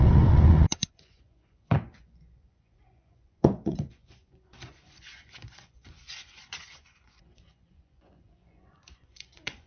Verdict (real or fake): fake